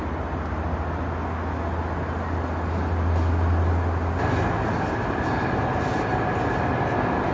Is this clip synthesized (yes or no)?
no